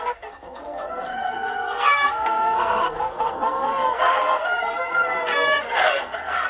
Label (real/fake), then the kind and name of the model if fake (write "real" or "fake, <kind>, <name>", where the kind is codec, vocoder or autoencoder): fake, codec, SNAC